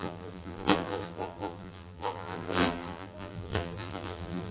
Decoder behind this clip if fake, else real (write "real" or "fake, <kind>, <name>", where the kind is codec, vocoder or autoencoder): fake, vocoder, BigVGAN v2